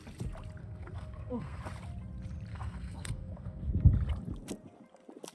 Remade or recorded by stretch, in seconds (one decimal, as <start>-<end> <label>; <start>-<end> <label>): 0.0-0.6 recorded; 0.6-1.6 remade; 1.6-2.5 recorded; 2.5-3.7 remade; 3.7-5.3 recorded